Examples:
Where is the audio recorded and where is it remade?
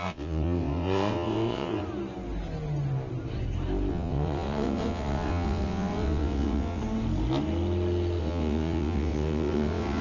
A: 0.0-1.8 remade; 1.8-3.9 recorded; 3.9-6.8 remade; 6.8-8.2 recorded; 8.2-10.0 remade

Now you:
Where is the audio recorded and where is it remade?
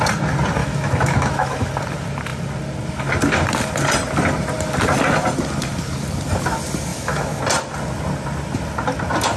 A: 0.0-0.6 recorded; 0.6-1.7 remade; 1.7-6.9 recorded; 6.9-7.4 remade; 7.4-9.4 recorded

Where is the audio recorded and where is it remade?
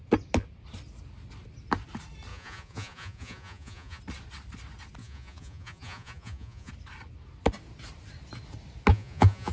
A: 0.0-2.3 recorded; 2.3-4.0 remade; 4.0-5.0 recorded; 5.0-6.7 remade; 6.7-8.9 recorded; 8.9-9.5 remade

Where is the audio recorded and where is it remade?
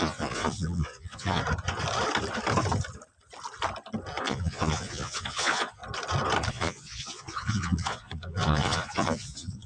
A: 0.0-1.4 remade; 1.4-4.2 recorded; 4.2-5.8 remade; 5.8-6.5 recorded; 6.5-9.7 remade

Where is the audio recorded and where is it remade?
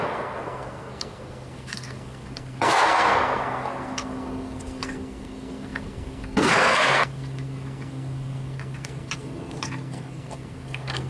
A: 0.0-11.1 remade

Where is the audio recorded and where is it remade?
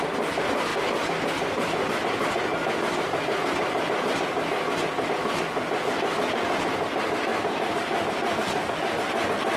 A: 0.0-7.3 recorded; 7.3-8.7 remade; 8.7-9.6 recorded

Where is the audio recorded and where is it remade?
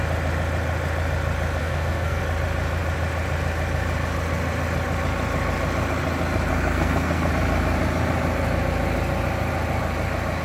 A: 0.0-1.6 recorded; 1.6-2.2 remade; 2.2-6.5 recorded; 6.5-7.3 remade; 7.3-10.4 recorded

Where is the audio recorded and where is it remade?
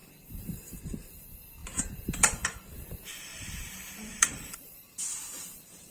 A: 0.0-0.8 remade; 0.8-1.6 recorded; 1.6-2.7 remade; 2.7-4.1 recorded; 4.1-5.9 remade